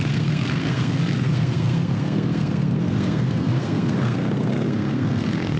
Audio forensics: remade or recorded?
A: remade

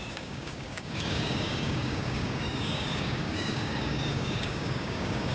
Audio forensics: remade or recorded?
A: remade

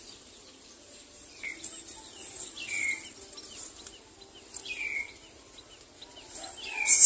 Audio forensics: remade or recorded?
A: recorded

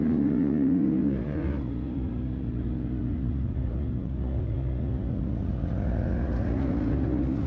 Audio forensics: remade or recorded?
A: remade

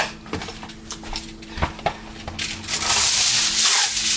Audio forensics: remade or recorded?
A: recorded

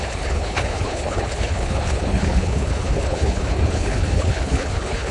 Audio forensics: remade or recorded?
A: remade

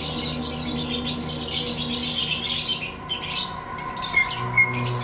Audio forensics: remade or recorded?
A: recorded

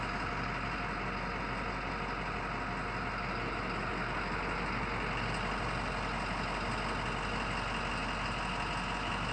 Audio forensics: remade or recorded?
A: recorded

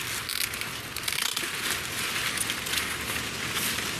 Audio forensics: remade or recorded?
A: recorded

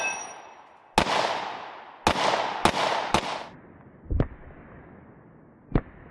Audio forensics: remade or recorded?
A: recorded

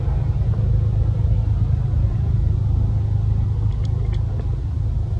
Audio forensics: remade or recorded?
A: recorded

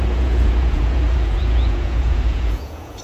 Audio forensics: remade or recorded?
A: remade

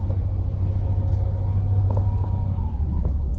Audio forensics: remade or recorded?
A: recorded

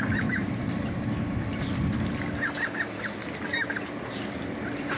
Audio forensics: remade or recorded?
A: recorded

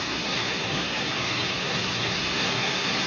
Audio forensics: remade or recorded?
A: remade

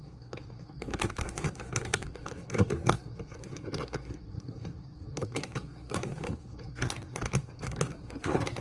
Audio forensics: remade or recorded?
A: remade